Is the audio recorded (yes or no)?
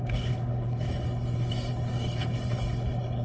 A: no